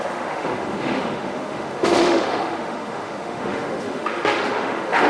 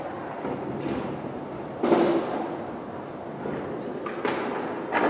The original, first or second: second